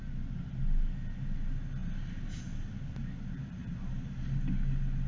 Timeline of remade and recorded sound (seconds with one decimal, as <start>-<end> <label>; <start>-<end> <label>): 0.0-5.1 recorded